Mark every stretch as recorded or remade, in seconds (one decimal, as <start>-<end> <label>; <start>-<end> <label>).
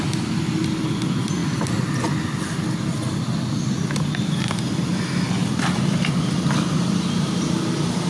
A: 0.0-8.1 recorded